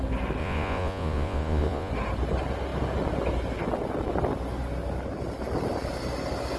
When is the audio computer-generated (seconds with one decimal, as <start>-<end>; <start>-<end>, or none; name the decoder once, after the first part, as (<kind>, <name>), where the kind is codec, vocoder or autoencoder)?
0.4-1.9 (vocoder, Vocos)